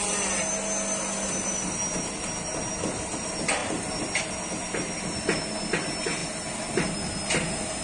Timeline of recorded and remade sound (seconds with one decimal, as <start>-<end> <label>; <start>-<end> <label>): 0.0-7.8 recorded